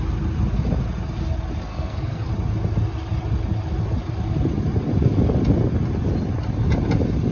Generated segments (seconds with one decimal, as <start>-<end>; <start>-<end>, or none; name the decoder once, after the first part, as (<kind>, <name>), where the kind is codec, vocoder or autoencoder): 1.7-2.3 (codec, SNAC)